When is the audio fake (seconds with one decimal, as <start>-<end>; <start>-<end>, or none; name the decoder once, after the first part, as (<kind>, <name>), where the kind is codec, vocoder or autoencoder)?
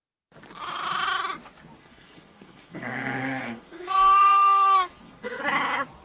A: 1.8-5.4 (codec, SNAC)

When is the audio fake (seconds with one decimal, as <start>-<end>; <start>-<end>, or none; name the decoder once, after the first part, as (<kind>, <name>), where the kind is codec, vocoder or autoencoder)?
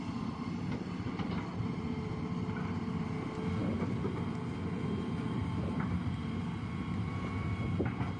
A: none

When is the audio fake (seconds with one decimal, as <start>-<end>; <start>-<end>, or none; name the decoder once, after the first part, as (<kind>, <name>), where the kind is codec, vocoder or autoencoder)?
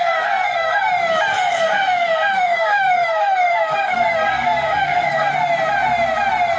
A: 0.0-0.9 (codec, SNAC); 1.3-5.3